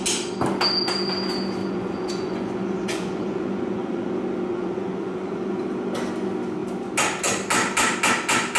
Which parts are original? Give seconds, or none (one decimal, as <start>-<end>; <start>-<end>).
0.0-1.6; 4.1-4.5; 5.6-8.6